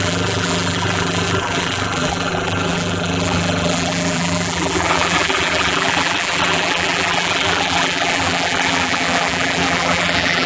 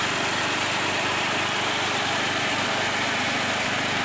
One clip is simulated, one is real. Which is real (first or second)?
second